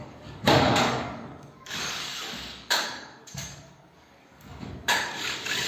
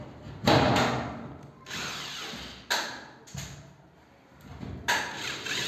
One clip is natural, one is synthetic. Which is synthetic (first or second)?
first